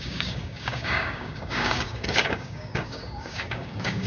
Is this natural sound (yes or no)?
no